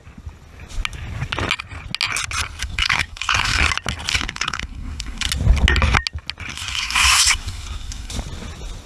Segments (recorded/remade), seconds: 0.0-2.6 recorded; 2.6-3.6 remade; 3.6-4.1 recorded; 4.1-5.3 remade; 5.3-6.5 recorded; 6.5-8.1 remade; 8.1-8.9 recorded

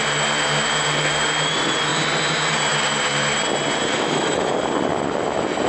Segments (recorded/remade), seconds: 0.0-3.9 recorded; 3.9-4.4 remade; 4.4-5.7 recorded

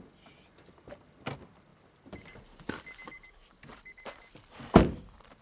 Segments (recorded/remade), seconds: 0.0-5.4 recorded